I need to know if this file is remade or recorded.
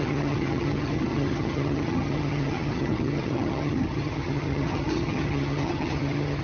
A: remade